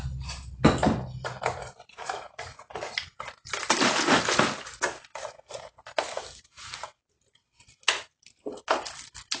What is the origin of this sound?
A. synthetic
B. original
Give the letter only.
B